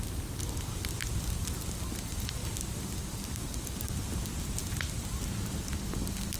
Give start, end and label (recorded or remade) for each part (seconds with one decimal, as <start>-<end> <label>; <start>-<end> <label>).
0.0-6.4 recorded